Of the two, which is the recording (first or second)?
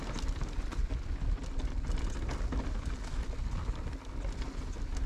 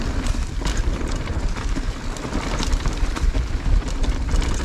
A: first